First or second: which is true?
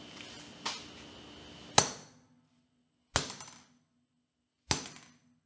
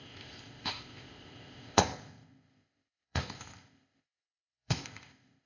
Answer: first